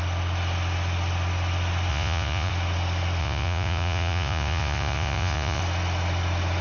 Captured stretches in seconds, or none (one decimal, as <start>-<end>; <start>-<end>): 0.0-1.9; 2.5-3.2; 5.6-6.6